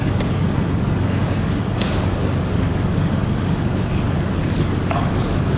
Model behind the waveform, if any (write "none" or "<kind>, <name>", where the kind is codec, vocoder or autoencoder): codec, DAC